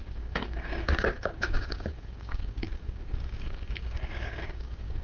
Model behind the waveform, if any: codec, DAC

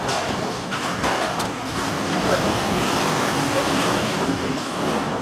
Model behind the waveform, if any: codec, DAC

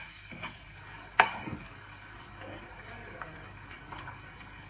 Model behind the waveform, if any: codec, DAC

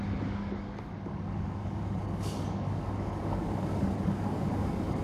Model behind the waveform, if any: codec, DAC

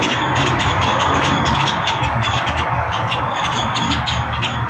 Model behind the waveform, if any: codec, DAC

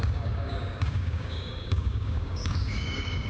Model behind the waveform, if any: codec, DAC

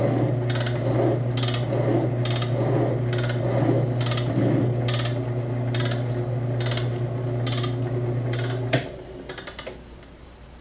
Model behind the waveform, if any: none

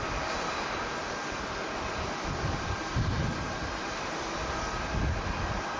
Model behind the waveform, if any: none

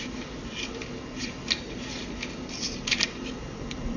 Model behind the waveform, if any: none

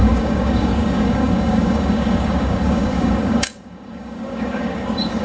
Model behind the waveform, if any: codec, DAC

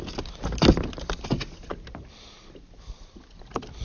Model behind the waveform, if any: none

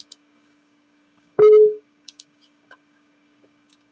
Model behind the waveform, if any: codec, DAC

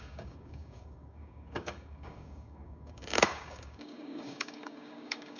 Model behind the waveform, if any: codec, DAC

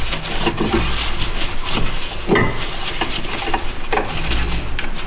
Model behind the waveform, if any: none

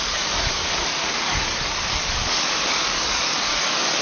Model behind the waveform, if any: codec, DAC